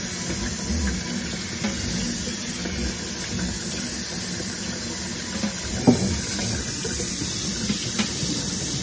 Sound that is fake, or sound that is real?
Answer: real